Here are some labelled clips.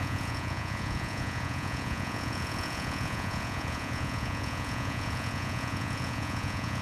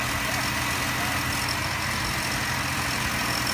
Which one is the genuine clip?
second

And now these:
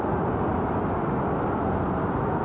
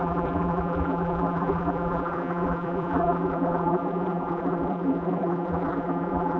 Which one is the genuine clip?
first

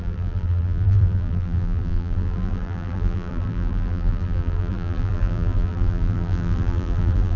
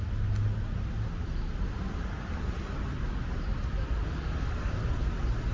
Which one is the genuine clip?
second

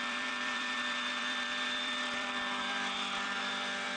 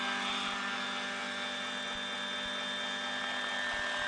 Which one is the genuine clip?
second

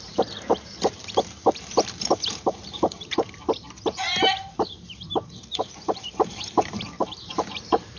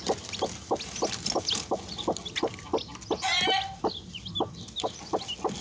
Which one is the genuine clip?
second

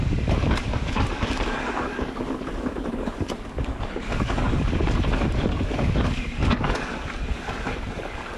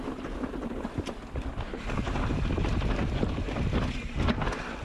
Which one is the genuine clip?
second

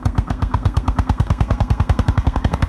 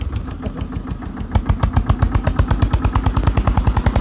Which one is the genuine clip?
second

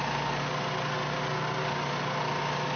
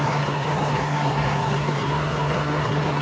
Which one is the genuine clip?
first